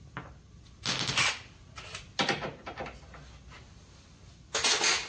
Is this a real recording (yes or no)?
yes